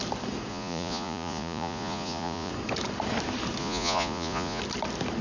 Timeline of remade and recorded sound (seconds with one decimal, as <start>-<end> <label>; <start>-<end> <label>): 0.0-0.5 recorded; 0.5-2.5 remade; 2.5-3.6 recorded; 3.6-4.6 remade; 4.6-5.2 recorded